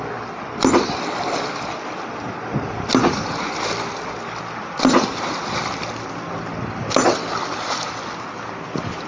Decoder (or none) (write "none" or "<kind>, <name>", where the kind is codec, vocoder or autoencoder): none